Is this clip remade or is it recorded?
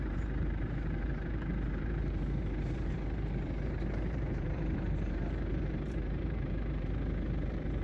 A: remade